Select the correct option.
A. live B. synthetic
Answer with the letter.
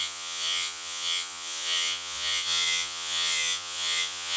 B